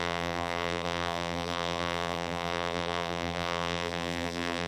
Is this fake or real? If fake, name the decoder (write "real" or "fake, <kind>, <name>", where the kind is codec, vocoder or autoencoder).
fake, vocoder, BigVGAN v2